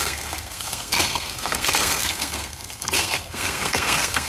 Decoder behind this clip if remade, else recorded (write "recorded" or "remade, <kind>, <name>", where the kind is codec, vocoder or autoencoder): remade, codec, SNAC